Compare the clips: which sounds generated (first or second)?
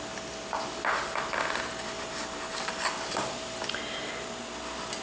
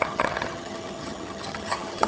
second